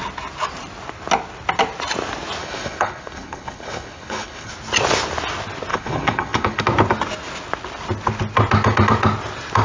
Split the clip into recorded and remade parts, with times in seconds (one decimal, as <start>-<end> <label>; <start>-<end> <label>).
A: 0.0-2.4 recorded; 2.4-4.5 remade; 4.5-5.7 recorded; 5.7-6.6 remade; 6.6-9.6 recorded